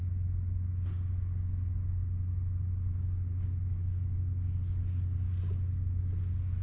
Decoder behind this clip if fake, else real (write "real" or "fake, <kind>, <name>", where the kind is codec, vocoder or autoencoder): real